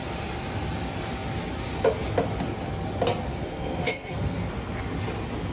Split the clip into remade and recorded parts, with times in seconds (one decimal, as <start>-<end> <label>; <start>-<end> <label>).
0.0-3.3 recorded; 3.3-4.5 remade; 4.5-5.5 recorded